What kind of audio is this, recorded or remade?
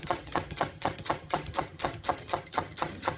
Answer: remade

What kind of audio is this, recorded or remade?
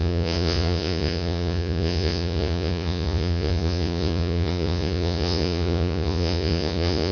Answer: remade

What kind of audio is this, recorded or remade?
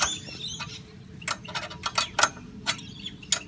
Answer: recorded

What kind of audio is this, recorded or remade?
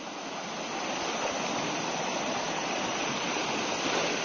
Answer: recorded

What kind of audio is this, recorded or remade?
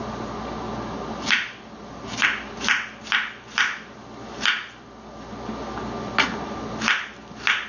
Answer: recorded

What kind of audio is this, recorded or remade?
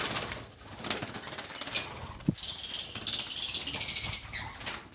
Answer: recorded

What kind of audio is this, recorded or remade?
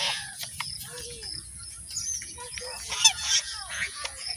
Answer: remade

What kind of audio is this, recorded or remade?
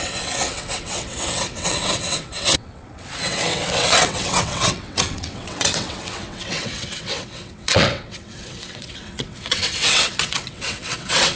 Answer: remade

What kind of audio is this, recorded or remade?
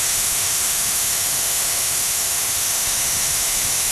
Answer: remade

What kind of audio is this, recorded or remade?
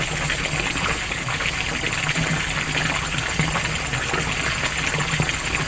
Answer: recorded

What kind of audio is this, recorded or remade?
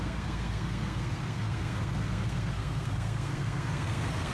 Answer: remade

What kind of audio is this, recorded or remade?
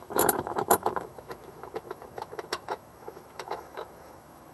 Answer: remade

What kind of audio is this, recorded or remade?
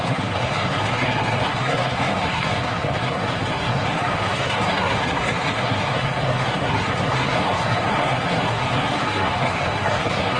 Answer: remade